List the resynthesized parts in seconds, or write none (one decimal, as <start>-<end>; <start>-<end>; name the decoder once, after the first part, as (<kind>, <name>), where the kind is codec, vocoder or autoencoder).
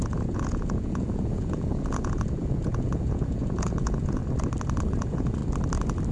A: 0.0-4.2 (vocoder, Vocos); 4.9-5.4